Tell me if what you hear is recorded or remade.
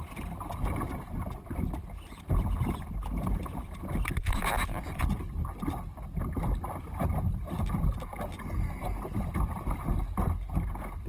recorded